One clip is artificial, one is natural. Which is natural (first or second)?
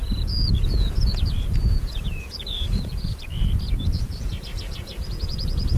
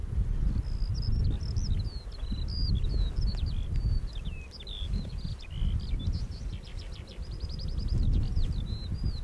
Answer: second